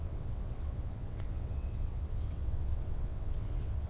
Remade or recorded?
remade